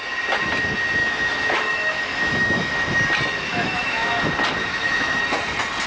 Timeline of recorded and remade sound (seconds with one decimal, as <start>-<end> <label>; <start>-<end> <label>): 0.0-1.0 recorded; 1.0-2.7 remade; 2.7-3.5 recorded; 3.5-4.1 remade; 4.1-4.6 recorded; 4.6-5.2 remade; 5.2-5.9 recorded